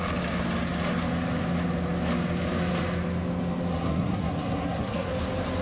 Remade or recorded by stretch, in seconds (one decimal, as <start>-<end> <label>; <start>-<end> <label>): 0.0-3.7 recorded; 3.7-5.1 remade; 5.1-5.6 recorded